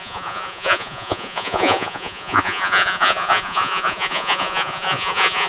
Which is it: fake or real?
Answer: fake